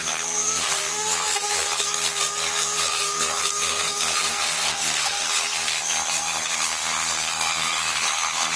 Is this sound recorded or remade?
remade